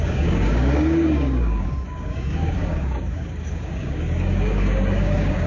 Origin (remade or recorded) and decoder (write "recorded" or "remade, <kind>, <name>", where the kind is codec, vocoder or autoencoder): remade, codec, DAC